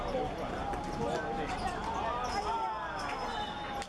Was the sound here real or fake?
real